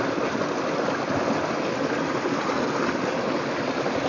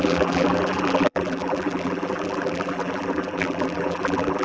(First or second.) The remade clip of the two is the second